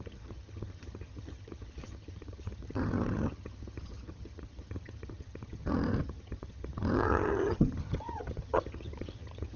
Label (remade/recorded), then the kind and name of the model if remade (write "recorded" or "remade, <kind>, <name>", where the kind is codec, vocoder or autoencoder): remade, vocoder, HiFi-GAN